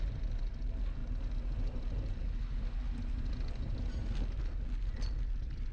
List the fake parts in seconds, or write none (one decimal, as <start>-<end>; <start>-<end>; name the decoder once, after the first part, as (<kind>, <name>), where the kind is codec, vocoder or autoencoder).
none